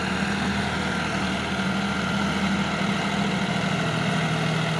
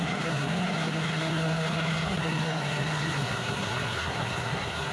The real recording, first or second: first